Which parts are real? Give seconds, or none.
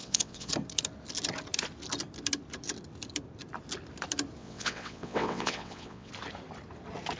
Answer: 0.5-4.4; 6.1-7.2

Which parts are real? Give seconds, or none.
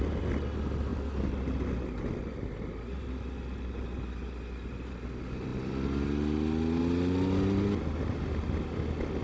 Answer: 0.0-9.2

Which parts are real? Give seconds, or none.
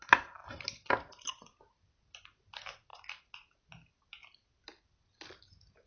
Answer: 0.0-5.9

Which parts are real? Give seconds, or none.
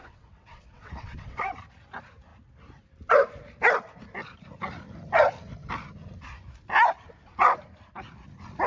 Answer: 1.5-8.7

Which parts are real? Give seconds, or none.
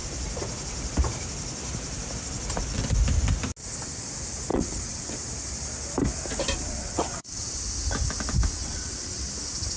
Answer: 0.0-4.5; 5.1-6.7; 7.4-8.6; 9.3-9.8